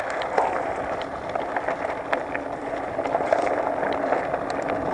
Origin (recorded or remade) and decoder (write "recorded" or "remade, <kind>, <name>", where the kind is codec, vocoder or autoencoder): recorded